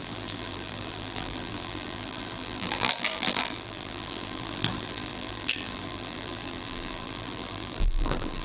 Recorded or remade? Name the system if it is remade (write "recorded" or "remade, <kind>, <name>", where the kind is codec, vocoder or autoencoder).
remade, vocoder, BigVGAN v2